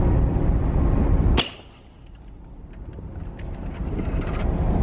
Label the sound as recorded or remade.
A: recorded